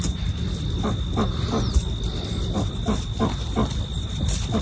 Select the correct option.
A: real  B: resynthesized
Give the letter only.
A